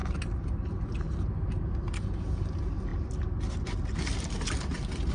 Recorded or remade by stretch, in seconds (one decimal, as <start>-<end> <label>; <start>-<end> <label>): 0.0-5.1 recorded